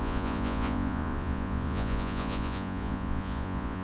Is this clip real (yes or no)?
no